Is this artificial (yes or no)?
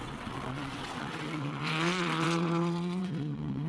yes